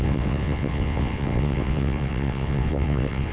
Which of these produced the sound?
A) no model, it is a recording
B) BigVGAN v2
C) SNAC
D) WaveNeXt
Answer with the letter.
D